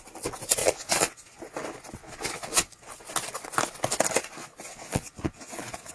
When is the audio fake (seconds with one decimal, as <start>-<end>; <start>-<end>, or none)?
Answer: 0.6-1.4; 2.0-2.9; 4.4-5.9